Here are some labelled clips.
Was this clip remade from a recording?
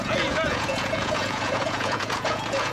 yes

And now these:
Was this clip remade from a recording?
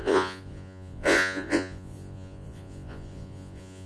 yes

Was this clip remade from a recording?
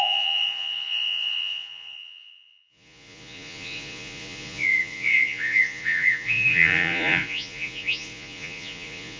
yes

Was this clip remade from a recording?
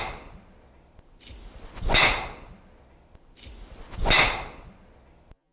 no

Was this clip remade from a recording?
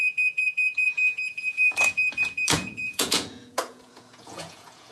yes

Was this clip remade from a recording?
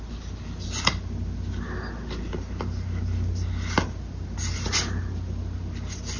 no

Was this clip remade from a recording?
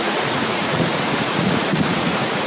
yes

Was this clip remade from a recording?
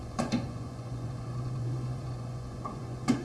yes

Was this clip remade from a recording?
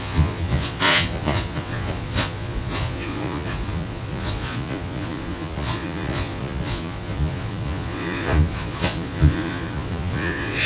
yes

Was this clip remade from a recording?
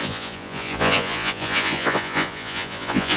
yes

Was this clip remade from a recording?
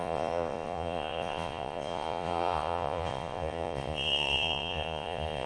yes